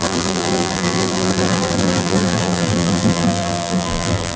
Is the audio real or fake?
fake